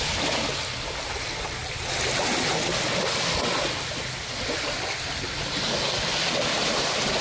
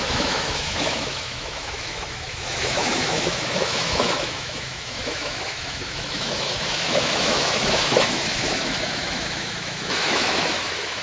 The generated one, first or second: second